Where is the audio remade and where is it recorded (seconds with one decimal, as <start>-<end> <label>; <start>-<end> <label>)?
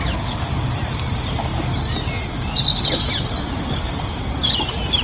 0.0-5.0 recorded